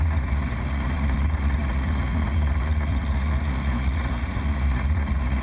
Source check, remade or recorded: remade